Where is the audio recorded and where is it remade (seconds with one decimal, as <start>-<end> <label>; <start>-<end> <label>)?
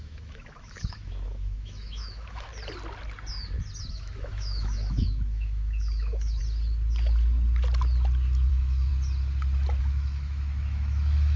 0.0-2.5 remade; 2.5-3.9 recorded; 3.9-6.4 remade; 6.4-8.5 recorded; 8.5-8.9 remade; 8.9-9.8 recorded; 9.8-11.4 remade